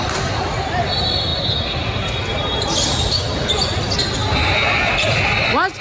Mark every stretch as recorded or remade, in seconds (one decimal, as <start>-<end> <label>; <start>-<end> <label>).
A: 0.0-5.8 recorded